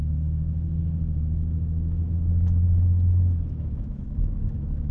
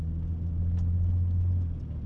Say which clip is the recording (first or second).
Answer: second